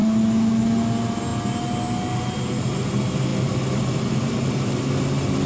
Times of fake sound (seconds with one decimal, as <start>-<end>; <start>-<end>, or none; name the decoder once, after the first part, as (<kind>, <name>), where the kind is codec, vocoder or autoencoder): none